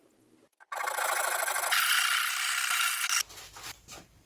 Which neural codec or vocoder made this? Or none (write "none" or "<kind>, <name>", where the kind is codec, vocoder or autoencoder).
none